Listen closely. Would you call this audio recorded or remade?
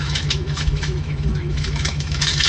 remade